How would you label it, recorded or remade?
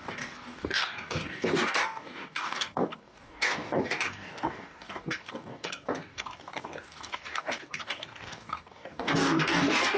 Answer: remade